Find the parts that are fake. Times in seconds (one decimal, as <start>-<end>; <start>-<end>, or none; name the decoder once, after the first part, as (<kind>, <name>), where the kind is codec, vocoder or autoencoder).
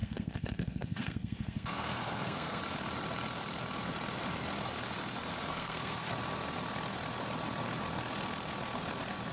0.0-2.6 (codec, SNAC); 5.5-6.1